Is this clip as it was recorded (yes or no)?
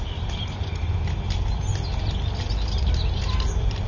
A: yes